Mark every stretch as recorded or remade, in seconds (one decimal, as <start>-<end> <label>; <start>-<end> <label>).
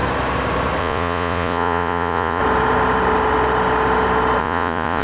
0.0-0.8 recorded; 0.8-2.4 remade; 2.4-4.4 recorded; 4.4-5.0 remade